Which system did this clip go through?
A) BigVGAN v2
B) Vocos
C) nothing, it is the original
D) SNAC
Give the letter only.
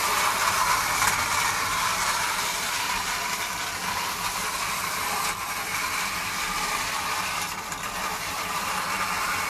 A